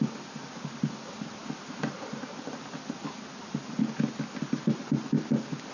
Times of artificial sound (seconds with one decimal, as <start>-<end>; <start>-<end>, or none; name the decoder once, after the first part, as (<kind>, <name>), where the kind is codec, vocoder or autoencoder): none